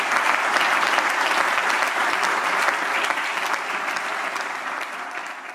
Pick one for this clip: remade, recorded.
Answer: recorded